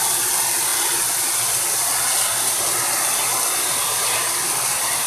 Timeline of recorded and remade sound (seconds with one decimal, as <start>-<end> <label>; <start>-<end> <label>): 0.0-5.1 recorded